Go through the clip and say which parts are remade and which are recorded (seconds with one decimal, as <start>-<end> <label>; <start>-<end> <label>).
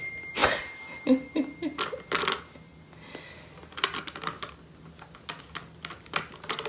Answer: 0.0-6.7 recorded